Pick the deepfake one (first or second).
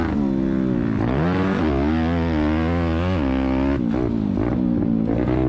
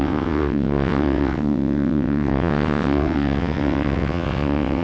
second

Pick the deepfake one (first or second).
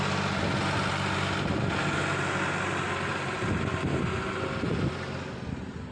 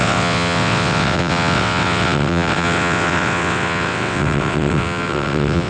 second